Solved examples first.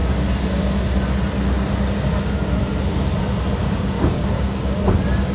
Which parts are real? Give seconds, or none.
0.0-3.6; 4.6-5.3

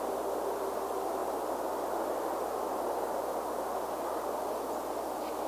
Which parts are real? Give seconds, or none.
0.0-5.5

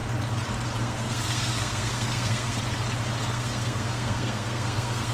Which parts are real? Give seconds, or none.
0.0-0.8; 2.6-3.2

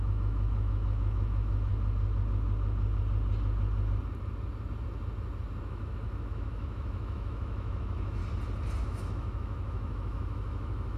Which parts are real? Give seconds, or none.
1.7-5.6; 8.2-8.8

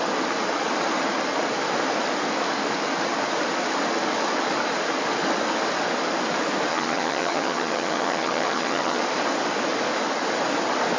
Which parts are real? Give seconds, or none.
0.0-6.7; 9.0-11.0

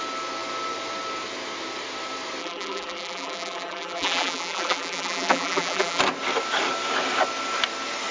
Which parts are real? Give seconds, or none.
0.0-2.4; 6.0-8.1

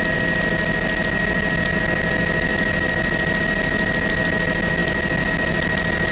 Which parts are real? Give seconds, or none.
0.0-6.1

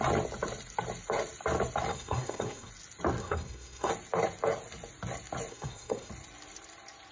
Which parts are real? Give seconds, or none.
0.0-1.9; 2.7-3.2; 3.9-5.5; 6.1-7.1